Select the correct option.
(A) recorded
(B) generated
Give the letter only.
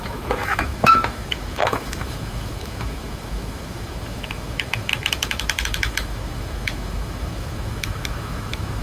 B